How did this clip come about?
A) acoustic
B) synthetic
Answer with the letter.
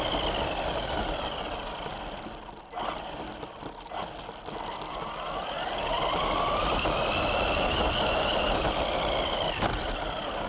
A